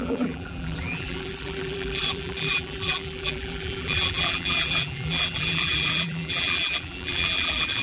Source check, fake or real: fake